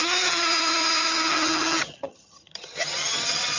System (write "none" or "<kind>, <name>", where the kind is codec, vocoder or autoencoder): vocoder, HiFi-GAN